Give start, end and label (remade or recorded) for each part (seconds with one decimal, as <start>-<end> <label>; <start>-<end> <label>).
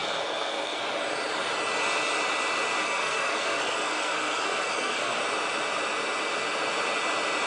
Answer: 0.0-0.8 remade; 0.8-2.8 recorded; 2.8-5.2 remade; 5.2-7.5 recorded